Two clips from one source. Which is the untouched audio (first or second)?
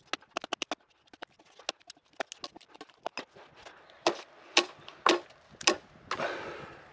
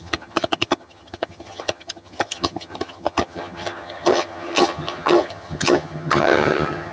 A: first